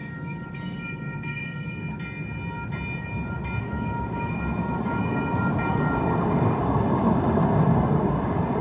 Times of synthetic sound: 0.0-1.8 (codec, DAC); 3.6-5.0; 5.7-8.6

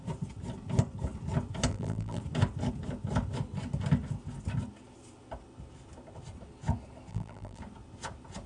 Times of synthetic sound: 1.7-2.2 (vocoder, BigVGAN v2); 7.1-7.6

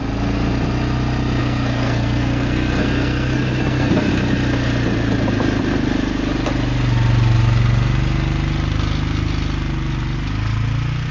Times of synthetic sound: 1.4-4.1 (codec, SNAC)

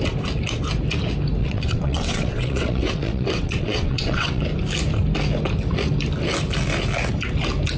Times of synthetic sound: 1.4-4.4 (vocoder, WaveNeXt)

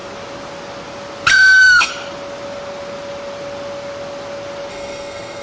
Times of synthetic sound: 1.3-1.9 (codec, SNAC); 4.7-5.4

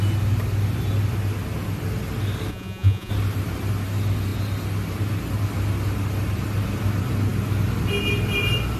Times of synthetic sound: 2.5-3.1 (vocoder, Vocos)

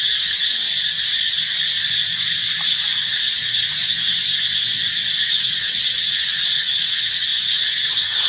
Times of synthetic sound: 0.0-0.6 (vocoder, WaveNeXt); 3.1-3.8; 5.2-8.3